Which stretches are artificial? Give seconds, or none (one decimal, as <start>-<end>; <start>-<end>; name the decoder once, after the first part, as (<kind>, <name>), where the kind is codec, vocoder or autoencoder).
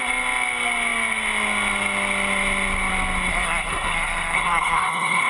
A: 3.3-5.3 (codec, SNAC)